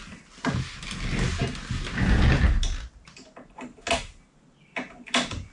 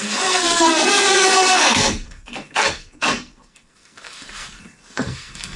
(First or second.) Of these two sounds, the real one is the first